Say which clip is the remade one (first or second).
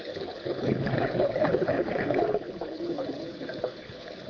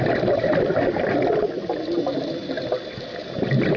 first